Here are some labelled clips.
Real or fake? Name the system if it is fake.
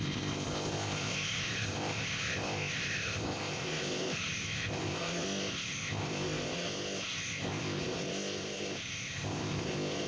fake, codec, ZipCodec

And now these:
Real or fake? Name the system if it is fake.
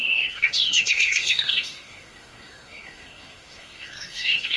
fake, codec, SNAC